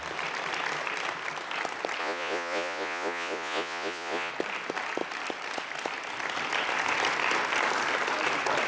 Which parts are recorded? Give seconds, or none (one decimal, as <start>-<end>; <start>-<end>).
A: 0.0-2.0; 4.3-8.7